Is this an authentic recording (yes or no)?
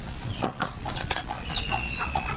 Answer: no